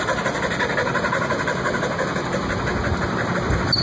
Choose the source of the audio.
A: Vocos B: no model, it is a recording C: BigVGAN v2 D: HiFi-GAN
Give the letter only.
B